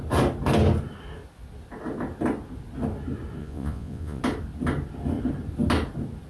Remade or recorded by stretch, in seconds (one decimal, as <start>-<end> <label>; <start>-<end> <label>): 0.0-3.4 recorded; 3.4-4.2 remade; 4.2-6.3 recorded